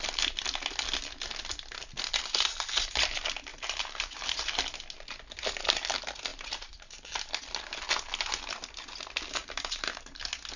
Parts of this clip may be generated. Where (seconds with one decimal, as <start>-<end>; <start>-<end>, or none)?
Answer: 3.5-4.4; 6.3-7.1; 9.4-10.2